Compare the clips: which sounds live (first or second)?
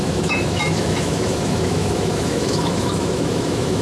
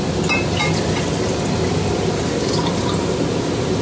second